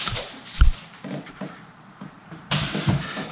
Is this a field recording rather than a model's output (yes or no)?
no